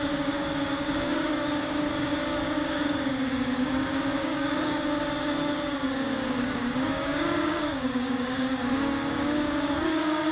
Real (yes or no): no